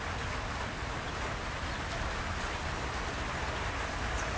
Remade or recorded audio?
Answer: recorded